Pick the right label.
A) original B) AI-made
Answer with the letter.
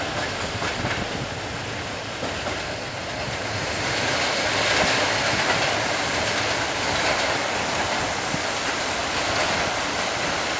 A